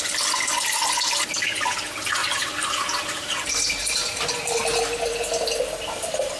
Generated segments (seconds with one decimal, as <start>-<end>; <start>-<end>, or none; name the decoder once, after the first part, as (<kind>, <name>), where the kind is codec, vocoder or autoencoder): 2.2-4.2 (vocoder, BigVGAN v2)